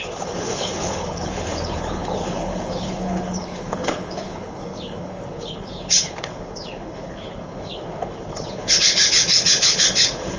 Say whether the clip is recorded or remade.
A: remade